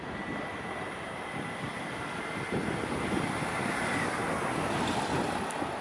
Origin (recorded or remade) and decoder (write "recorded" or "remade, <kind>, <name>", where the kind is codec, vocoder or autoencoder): recorded